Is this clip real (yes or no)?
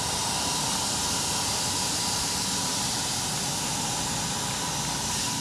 yes